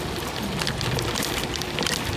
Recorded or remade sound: recorded